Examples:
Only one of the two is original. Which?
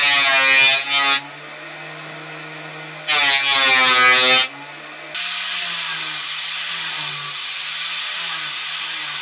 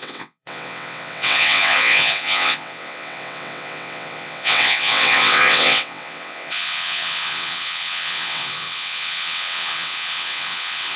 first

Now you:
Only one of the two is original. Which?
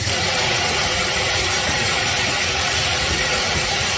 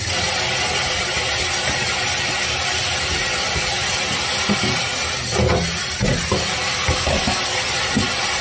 second